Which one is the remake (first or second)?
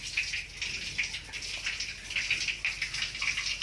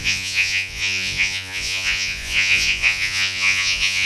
second